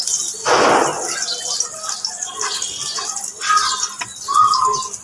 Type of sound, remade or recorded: recorded